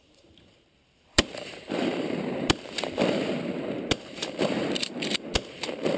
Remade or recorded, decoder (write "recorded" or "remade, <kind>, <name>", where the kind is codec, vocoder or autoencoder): remade, vocoder, BigVGAN v2